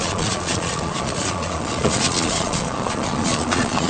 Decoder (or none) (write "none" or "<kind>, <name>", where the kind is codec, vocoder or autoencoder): vocoder, Vocos